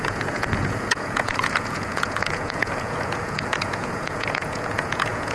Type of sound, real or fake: fake